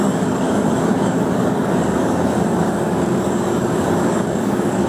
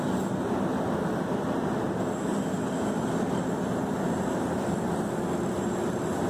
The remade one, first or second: first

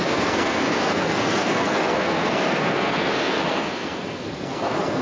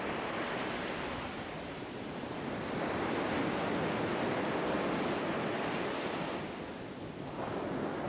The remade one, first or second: first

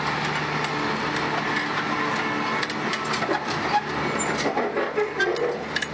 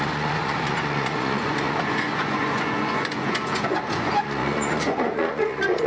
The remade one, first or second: second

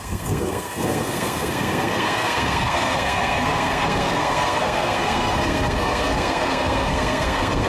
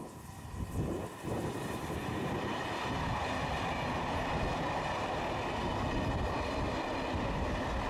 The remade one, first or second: first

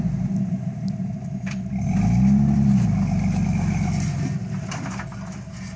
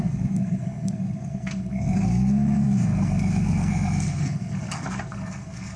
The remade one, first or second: second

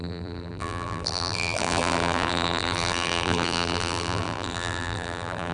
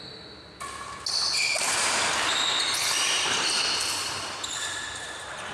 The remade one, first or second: first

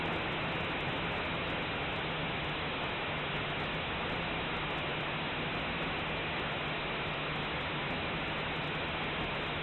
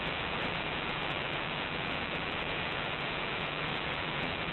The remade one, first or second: second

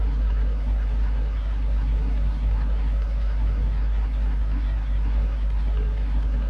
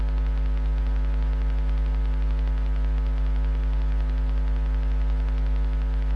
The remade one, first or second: first